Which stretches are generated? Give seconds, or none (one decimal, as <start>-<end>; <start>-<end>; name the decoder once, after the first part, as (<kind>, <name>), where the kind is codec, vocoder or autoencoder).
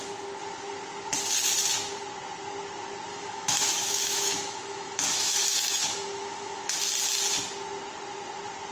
3.1-6.8 (autoencoder, DAC-VAE)